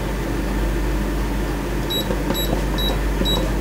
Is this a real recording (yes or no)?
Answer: yes